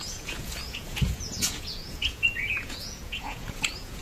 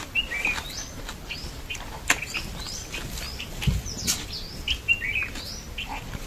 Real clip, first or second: second